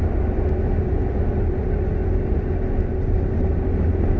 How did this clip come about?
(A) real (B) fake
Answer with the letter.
A